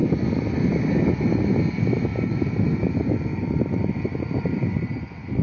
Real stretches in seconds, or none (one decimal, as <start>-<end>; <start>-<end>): 0.0-2.1; 2.9-3.3; 4.9-5.4